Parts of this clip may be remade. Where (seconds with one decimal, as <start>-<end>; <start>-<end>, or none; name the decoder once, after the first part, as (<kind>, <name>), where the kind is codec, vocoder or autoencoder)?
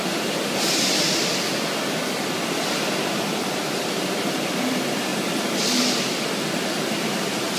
0.0-5.1 (vocoder, BigVGAN v2); 5.8-7.6